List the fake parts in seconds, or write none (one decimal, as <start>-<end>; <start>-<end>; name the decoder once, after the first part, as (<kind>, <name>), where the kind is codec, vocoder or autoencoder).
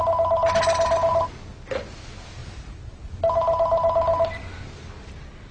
2.4-3.1 (vocoder, BigVGAN v2)